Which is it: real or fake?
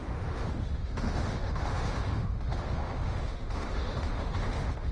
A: fake